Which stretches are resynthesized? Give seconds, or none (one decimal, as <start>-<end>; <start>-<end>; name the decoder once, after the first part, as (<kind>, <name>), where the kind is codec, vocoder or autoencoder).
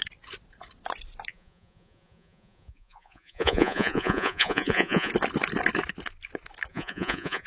1.3-5.1 (vocoder, Vocos); 6.7-7.5